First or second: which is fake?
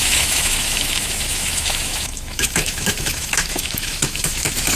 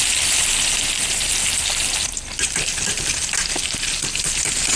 first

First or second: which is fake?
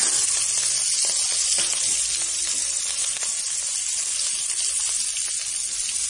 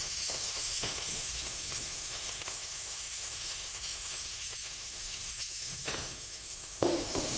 second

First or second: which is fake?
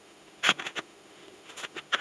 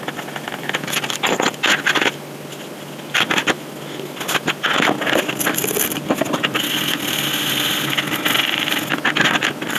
first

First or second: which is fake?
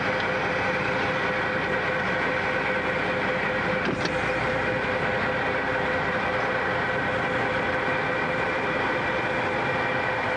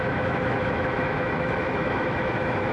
second